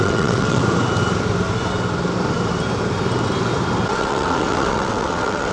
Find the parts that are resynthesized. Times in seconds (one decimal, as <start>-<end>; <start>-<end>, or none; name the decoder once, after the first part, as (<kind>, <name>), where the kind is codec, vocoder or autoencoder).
0.0-0.6 (vocoder, WaveNeXt); 3.9-5.5